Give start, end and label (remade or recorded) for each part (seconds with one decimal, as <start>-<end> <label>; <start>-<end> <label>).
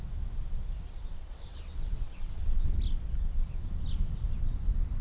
0.0-1.3 recorded; 1.3-2.8 remade; 2.8-5.0 recorded